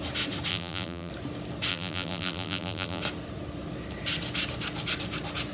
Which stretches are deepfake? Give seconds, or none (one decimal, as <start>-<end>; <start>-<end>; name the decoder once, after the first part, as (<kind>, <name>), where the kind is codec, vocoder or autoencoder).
0.5-1.1 (vocoder, BigVGAN v2); 1.7-3.0